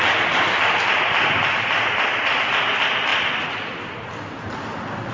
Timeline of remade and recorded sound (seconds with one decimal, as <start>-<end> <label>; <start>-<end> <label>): 0.0-5.1 recorded